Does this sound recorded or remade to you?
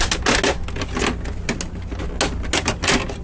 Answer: recorded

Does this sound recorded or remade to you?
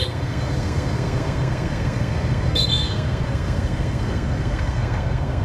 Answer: remade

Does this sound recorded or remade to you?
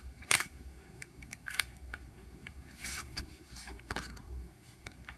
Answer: remade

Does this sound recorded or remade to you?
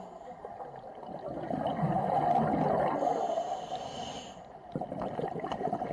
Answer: recorded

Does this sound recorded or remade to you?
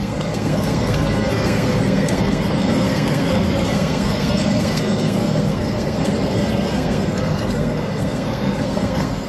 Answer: remade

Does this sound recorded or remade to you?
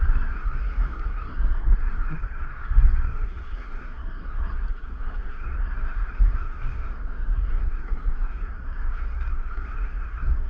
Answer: remade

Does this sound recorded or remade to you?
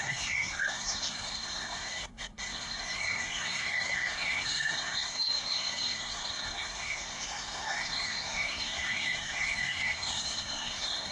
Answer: remade